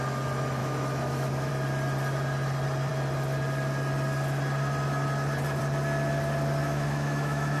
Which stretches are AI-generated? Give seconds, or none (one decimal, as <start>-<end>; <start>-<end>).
0.6-1.5; 6.6-7.6